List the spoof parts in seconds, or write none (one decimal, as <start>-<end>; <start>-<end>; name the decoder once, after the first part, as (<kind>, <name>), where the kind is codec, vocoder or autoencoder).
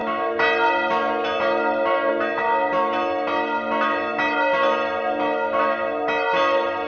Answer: none